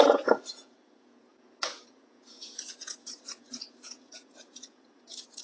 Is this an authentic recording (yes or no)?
no